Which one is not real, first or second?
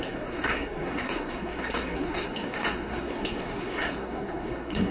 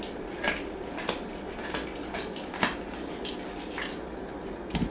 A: first